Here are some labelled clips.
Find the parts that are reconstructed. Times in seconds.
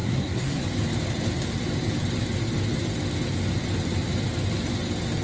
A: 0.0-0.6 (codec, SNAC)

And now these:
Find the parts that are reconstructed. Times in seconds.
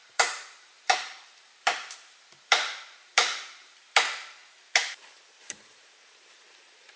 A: 0.0-7.0 (vocoder, BigVGAN v2)